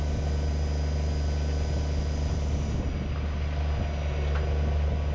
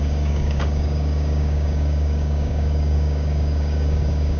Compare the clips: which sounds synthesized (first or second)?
second